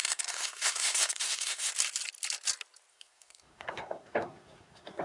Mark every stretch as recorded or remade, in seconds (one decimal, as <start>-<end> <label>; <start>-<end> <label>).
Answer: 0.0-1.7 remade; 1.7-2.9 recorded; 2.9-5.0 remade